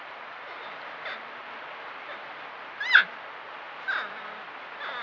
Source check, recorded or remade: recorded